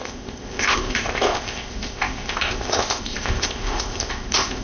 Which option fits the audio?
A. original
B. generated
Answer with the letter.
B